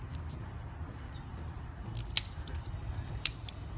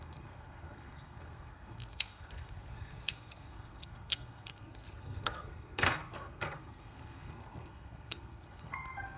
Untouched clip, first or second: first